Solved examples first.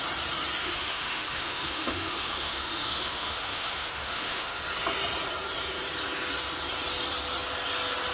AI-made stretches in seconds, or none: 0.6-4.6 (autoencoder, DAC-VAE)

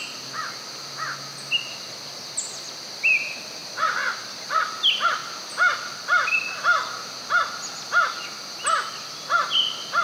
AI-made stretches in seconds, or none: none

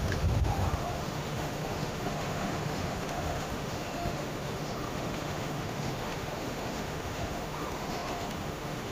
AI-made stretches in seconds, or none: 0.0-8.9 (autoencoder, DAC-VAE)

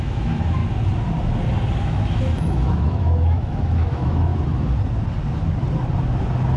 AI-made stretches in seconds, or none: 0.0-0.6 (autoencoder, DAC-VAE); 1.8-4.3